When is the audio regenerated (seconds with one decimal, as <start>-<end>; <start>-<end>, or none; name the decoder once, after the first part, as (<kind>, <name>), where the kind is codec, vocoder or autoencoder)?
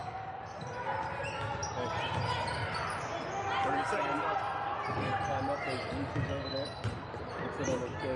0.0-0.6 (vocoder, BigVGAN v2); 6.5-7.2